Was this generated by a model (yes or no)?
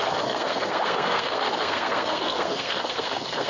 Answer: yes